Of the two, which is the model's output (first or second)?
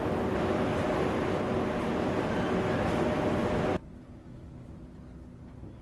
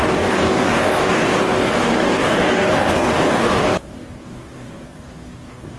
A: second